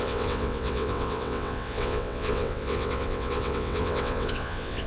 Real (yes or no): no